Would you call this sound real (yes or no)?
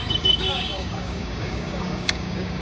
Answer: no